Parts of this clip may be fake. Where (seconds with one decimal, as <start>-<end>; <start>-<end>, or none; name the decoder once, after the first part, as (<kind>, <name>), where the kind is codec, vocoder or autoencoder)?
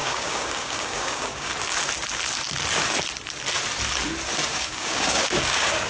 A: 0.0-1.5 (codec, DAC); 4.4-5.9